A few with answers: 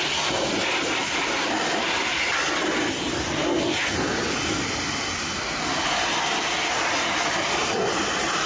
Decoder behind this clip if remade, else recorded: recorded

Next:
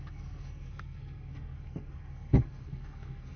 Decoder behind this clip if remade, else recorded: remade, codec, SNAC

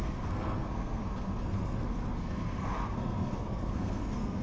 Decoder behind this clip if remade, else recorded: remade, codec, SNAC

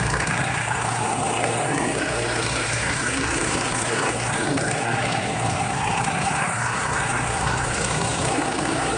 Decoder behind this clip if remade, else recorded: remade, codec, SNAC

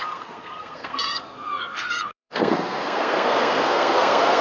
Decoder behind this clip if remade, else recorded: remade, codec, SNAC